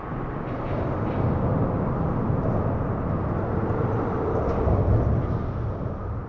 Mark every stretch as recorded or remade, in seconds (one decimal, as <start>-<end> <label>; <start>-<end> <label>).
0.0-6.3 recorded